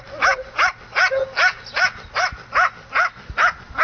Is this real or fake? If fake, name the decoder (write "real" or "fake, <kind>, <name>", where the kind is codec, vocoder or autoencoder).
real